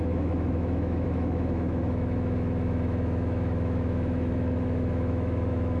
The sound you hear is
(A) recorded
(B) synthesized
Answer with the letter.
B